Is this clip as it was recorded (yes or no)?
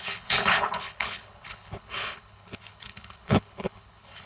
no